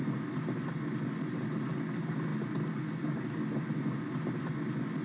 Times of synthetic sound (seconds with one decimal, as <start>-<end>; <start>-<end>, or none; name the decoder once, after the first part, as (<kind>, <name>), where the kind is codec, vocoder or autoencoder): none